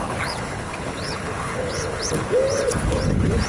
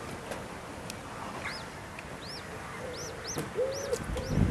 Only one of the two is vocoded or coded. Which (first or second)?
first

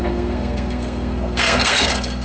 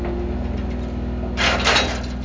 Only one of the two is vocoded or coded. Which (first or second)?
first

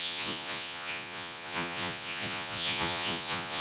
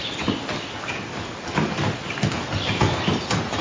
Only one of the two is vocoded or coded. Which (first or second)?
first